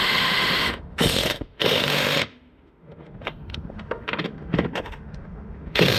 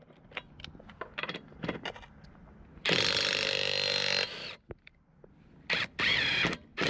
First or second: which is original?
second